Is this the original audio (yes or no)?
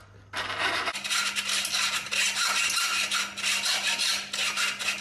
yes